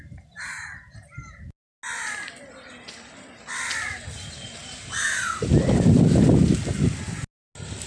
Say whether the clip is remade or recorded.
recorded